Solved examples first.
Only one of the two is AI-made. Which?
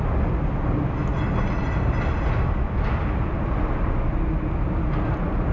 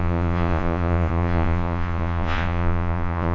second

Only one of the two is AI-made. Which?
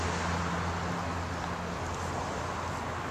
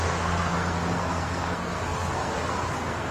second